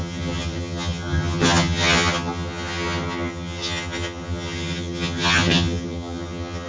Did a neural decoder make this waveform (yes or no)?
yes